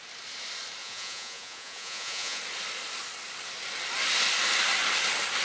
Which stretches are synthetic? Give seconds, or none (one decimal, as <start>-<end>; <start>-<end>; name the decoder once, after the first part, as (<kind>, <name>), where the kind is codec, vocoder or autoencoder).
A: 0.8-2.4 (vocoder, Vocos)

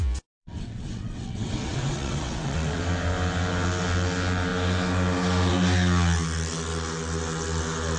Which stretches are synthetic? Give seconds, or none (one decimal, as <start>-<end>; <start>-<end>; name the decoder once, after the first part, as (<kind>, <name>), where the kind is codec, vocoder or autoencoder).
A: 0.4-2.8 (vocoder, WaveNeXt)

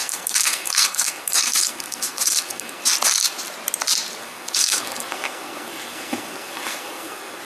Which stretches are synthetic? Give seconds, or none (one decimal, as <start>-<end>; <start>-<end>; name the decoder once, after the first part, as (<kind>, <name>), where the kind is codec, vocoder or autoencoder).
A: 0.0-2.8 (codec, SNAC); 4.2-7.4

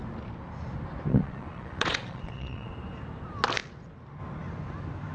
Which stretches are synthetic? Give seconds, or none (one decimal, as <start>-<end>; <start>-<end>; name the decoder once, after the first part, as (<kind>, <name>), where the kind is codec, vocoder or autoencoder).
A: 1.1-2.7 (vocoder, Vocos)